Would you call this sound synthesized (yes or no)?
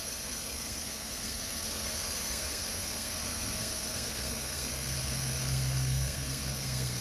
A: yes